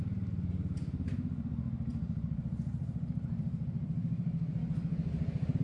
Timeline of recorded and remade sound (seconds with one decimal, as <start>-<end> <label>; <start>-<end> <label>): 0.0-1.9 recorded; 1.9-4.5 remade; 4.5-5.6 recorded